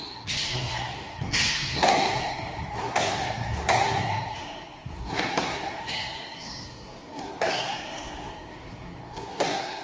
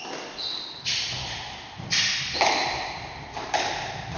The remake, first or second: first